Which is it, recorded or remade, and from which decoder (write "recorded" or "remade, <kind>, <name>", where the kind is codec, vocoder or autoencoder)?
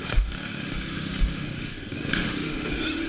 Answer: remade, autoencoder, DAC-VAE